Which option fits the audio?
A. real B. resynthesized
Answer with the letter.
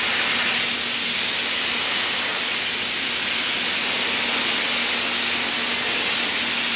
A